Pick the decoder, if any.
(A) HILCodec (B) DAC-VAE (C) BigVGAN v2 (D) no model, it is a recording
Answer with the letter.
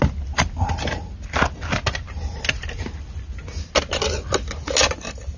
D